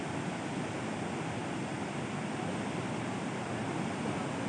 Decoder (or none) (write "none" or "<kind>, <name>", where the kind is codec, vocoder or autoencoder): none